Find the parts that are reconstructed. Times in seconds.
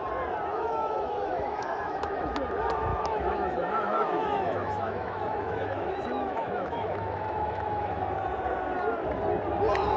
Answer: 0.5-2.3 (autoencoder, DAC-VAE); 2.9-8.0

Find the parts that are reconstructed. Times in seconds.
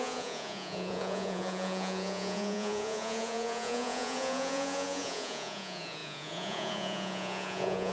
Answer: 0.0-7.9 (vocoder, Vocos)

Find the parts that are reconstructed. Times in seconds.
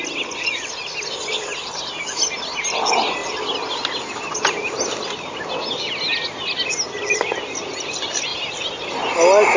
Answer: none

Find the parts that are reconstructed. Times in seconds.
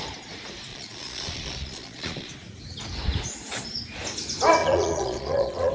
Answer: 0.7-2.3 (vocoder, Vocos); 4.6-5.7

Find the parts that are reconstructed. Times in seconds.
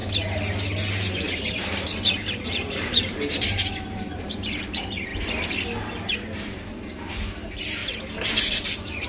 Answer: 1.1-5.1 (vocoder, BigVGAN v2); 6.1-7.8; 8.4-9.1